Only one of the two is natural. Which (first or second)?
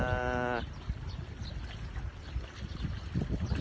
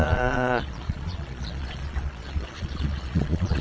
first